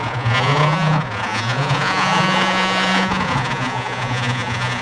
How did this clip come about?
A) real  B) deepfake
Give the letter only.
B